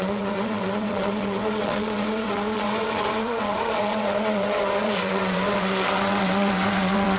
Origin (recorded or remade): remade